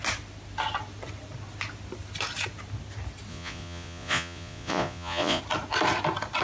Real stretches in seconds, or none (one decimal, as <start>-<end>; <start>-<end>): 0.0-3.3; 5.4-6.4